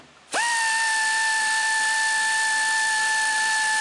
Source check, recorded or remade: remade